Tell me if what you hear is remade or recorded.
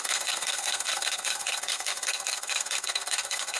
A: remade